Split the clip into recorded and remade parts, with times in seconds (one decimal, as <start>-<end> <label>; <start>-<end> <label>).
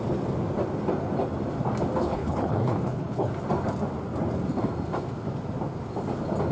0.0-2.0 recorded; 2.0-3.3 remade; 3.3-6.5 recorded